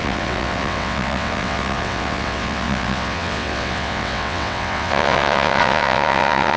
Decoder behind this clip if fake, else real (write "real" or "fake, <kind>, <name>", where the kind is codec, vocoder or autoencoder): fake, vocoder, WaveNeXt